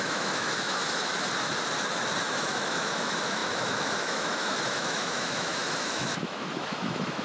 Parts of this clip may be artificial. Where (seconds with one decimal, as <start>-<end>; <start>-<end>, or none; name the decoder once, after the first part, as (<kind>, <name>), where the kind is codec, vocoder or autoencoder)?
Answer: 0.0-1.1 (autoencoder, DAC-VAE); 2.2-7.2